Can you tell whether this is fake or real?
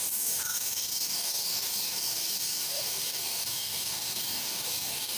fake